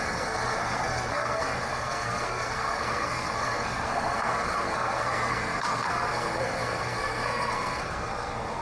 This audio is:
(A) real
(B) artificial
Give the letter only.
B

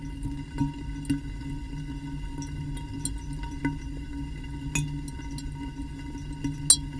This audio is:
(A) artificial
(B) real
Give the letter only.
B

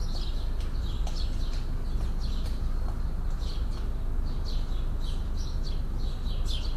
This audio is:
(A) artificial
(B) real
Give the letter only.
B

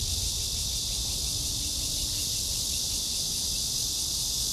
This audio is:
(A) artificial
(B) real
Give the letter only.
B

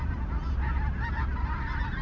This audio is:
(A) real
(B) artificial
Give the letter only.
A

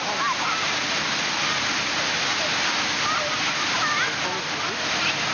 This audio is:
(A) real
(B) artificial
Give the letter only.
A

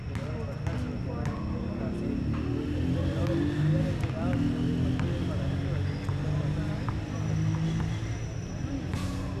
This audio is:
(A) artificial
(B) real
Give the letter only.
B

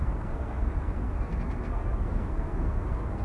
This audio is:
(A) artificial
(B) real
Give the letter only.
A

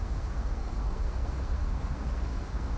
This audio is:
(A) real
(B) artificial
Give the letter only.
B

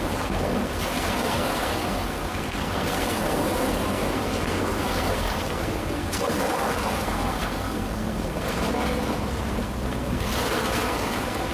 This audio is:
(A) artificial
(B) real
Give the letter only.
A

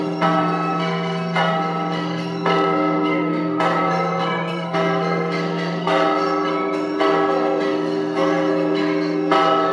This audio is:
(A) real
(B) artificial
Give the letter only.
B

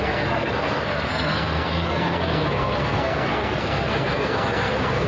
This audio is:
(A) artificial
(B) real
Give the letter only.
A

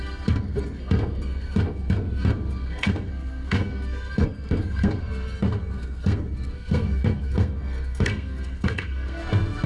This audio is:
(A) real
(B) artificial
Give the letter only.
B